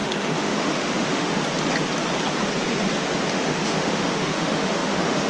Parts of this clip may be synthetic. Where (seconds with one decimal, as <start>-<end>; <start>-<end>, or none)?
0.0-1.4; 3.3-5.3

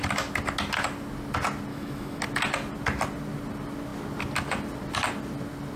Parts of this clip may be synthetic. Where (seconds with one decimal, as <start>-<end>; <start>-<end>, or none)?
1.7-2.2

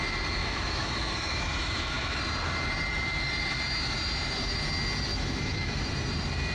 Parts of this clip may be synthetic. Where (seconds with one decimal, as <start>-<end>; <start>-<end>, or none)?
0.4-2.2; 5.1-5.8

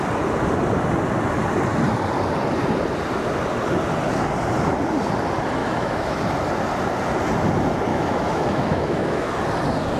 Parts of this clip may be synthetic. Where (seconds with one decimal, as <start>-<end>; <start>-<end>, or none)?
5.6-6.2; 7.9-9.3

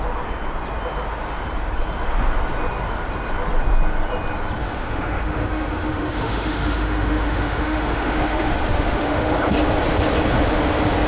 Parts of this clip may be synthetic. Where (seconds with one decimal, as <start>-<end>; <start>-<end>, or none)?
4.6-9.3